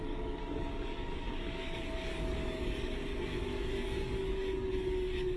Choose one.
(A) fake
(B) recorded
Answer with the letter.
A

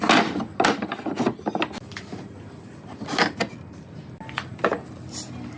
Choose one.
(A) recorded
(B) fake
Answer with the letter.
A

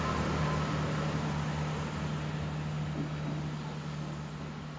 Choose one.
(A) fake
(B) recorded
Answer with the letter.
B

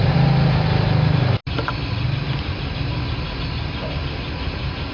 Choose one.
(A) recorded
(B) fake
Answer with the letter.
A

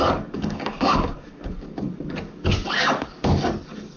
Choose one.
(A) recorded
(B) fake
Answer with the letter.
B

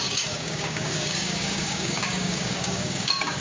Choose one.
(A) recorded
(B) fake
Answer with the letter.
B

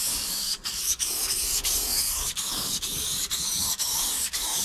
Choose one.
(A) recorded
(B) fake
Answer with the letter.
B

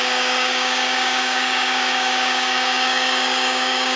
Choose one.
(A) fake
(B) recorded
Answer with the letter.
A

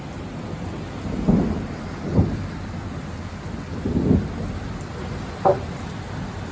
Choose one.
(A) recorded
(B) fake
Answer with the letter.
A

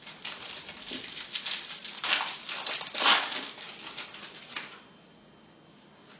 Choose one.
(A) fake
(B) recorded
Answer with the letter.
B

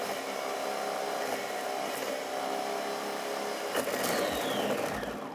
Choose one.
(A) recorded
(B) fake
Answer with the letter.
A